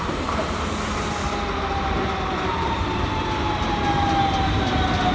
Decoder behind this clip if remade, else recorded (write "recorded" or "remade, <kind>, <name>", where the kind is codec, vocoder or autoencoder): recorded